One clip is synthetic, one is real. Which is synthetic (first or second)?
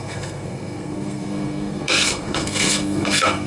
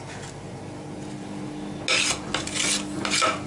first